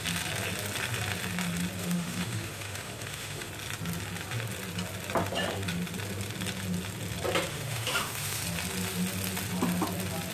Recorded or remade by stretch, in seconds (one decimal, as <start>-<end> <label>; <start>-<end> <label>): 0.0-1.8 recorded; 1.8-3.5 remade; 3.5-7.5 recorded; 7.5-8.4 remade; 8.4-10.3 recorded